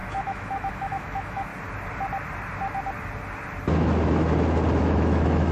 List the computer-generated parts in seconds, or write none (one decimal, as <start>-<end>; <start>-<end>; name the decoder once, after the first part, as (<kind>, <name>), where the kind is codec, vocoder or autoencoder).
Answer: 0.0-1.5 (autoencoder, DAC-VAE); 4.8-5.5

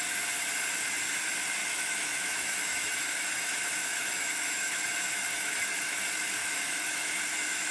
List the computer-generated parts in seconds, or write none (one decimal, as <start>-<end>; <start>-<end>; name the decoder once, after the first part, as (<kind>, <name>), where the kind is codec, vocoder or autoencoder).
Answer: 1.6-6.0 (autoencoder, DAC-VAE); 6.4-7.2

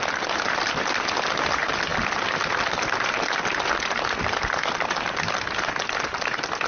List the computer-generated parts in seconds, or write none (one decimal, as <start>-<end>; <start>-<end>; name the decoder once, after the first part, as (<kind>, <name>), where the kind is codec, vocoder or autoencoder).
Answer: none

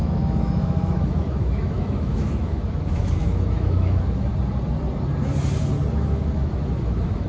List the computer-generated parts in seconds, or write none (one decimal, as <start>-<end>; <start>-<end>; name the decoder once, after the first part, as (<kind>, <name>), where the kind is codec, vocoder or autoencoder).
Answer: 0.0-4.3 (autoencoder, DAC-VAE); 5.9-7.3